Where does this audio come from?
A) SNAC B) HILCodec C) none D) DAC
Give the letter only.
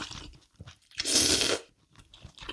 C